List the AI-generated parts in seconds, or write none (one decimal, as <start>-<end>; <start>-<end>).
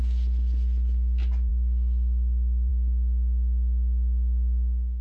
none